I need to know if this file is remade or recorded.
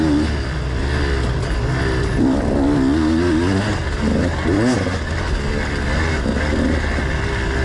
recorded